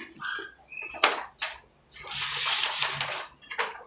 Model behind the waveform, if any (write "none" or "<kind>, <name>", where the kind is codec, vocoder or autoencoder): none